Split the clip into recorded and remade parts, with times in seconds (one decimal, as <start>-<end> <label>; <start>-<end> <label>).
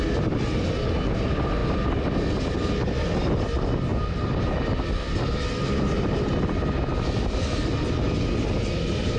0.0-1.6 recorded; 1.6-2.4 remade; 2.4-3.9 recorded; 3.9-6.3 remade; 6.3-9.2 recorded